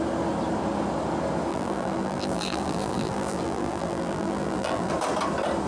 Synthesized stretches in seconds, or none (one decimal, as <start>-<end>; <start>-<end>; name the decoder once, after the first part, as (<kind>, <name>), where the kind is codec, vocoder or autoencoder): 1.5-4.9 (vocoder, BigVGAN v2)